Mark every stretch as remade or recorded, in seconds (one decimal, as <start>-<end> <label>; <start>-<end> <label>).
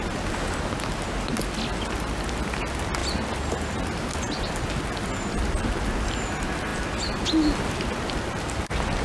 0.0-9.0 recorded